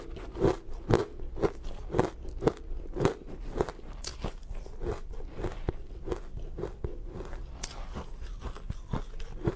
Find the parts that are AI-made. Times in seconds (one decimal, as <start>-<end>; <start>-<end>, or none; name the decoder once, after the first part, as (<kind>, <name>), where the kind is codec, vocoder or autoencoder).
none